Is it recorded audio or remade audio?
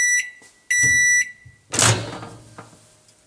recorded